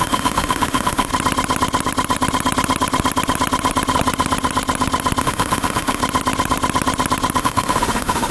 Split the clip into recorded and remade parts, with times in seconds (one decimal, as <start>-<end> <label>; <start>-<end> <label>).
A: 0.0-1.1 remade; 1.1-5.2 recorded; 5.2-6.0 remade; 6.0-7.4 recorded; 7.4-8.3 remade